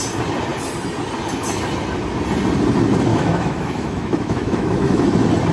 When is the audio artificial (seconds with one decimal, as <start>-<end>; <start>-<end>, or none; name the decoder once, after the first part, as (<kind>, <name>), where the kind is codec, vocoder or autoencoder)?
3.1-5.0 (autoencoder, DAC-VAE)